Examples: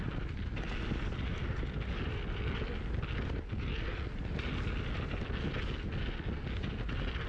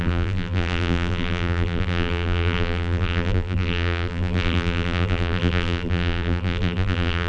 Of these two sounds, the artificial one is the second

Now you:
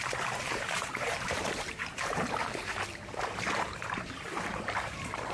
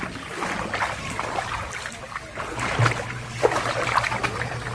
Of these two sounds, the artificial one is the first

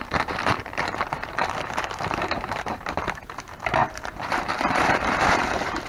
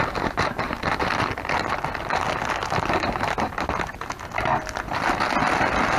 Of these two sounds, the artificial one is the first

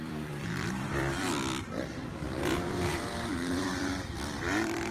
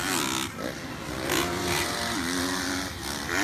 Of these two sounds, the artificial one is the first